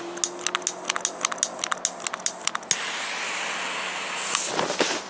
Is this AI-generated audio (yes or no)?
no